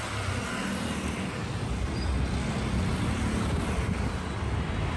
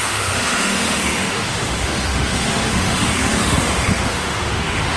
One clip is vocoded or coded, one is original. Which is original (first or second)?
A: first